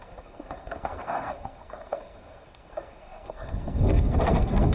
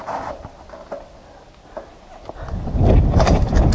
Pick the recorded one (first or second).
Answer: second